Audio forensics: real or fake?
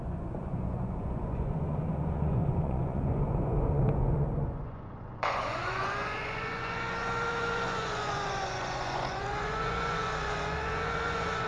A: fake